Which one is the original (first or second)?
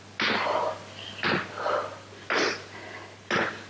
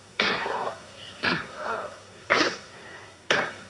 first